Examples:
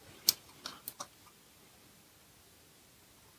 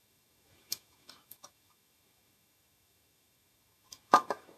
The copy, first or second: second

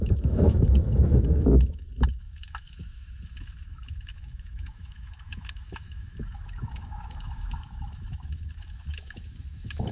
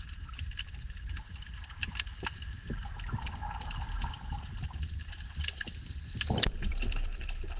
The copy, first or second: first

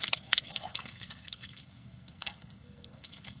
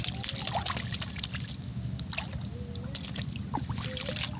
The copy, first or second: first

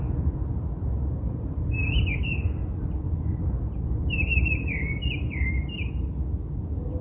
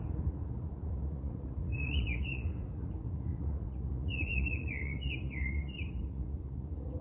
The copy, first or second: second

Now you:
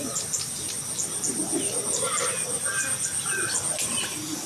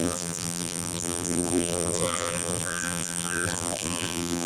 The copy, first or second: second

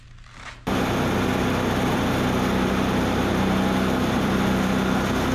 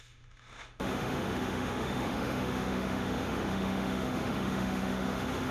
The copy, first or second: second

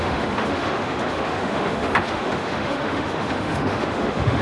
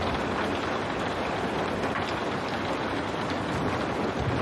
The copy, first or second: first